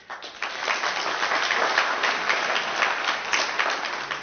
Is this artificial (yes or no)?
no